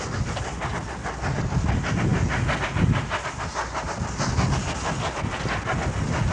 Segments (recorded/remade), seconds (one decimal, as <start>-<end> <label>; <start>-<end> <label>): 0.0-6.3 recorded

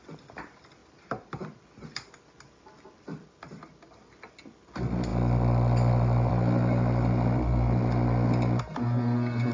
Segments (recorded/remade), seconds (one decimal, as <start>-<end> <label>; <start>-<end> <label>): 0.0-0.8 recorded; 0.8-1.6 remade; 1.6-9.5 recorded

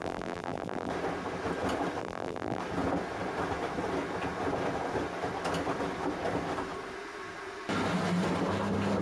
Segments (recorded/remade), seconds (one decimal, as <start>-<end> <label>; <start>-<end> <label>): 0.0-0.9 remade; 0.9-2.0 recorded; 2.0-2.6 remade; 2.6-9.0 recorded

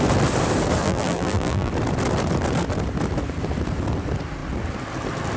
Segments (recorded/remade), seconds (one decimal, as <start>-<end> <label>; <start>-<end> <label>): 0.0-0.8 recorded; 0.8-1.7 remade; 1.7-5.4 recorded